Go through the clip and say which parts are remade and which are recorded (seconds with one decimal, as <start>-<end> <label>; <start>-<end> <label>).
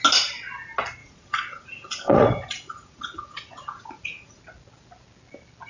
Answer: 0.0-1.0 recorded; 1.0-4.4 remade; 4.4-5.7 recorded